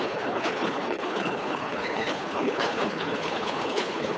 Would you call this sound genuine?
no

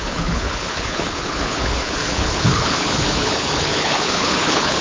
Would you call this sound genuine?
no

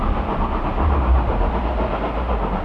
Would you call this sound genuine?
yes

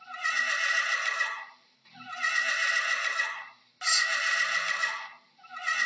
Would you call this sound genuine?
yes